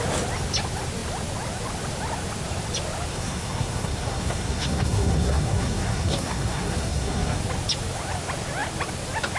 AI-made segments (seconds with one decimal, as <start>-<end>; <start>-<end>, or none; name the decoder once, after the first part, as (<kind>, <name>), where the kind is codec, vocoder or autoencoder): 3.1-7.4 (codec, SNAC)